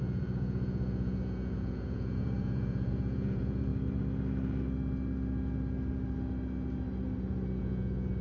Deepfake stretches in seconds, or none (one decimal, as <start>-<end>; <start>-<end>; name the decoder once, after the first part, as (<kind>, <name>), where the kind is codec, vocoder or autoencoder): 0.0-3.7 (vocoder, Vocos); 7.6-8.2